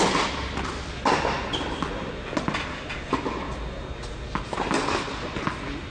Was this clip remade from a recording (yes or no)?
no